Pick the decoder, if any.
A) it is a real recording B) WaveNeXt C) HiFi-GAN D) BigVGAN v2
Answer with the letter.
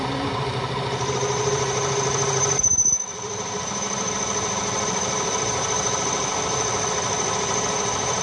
D